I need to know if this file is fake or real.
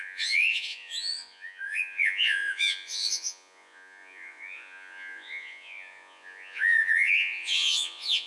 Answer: fake